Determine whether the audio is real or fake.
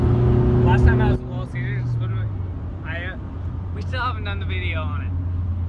real